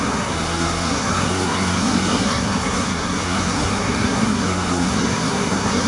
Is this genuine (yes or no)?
no